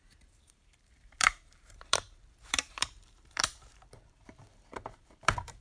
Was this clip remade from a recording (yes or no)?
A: yes